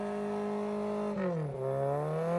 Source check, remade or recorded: recorded